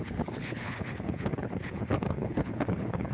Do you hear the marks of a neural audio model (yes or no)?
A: yes